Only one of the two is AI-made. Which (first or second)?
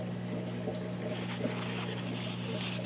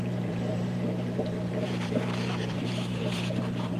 second